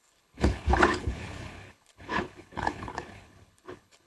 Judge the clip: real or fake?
fake